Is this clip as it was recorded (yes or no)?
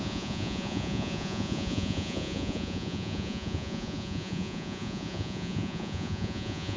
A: no